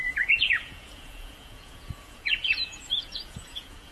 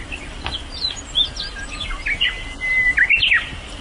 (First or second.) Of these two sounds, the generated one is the first